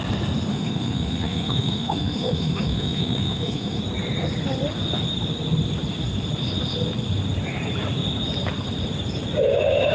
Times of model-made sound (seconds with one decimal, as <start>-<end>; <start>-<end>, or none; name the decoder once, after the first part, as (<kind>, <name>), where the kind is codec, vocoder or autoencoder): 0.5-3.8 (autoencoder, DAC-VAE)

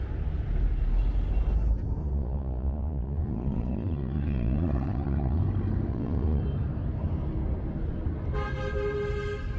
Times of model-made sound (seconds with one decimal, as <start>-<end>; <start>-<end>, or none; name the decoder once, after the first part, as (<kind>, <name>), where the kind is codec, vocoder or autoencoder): 2.0-5.4 (vocoder, Vocos); 5.9-6.4

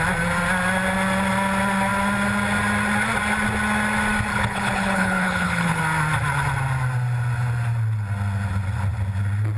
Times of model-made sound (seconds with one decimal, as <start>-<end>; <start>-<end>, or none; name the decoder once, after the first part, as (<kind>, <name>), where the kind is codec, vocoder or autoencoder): 4.3-5.8 (codec, HILCodec)

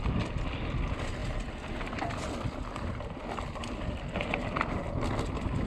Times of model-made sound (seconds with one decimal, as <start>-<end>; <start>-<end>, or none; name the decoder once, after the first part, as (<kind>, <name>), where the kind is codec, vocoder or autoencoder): none

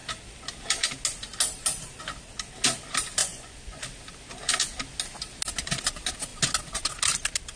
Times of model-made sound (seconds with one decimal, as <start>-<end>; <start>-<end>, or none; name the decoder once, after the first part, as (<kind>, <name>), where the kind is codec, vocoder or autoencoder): 3.2-3.8 (vocoder, Vocos)

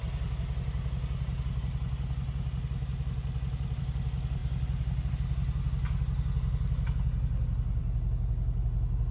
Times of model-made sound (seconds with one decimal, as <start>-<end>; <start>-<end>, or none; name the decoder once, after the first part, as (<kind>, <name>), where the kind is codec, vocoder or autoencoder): none

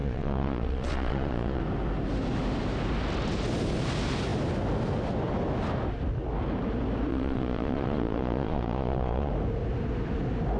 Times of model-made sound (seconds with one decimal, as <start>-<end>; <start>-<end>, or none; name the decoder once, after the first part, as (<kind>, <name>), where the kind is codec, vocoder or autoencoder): 0.0-1.6 (vocoder, Vocos); 7.1-9.3